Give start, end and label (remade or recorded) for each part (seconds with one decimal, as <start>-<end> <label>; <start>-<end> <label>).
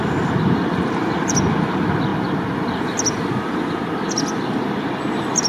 0.0-5.5 recorded